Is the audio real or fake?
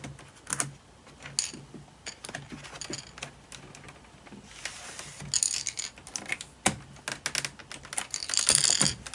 real